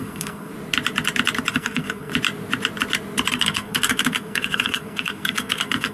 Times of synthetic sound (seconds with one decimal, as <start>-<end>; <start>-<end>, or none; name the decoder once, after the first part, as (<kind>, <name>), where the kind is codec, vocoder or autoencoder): 0.0-0.5 (codec, SNAC); 1.5-2.1; 3.3-5.9